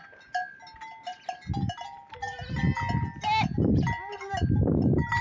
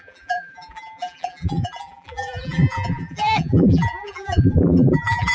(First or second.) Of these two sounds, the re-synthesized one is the second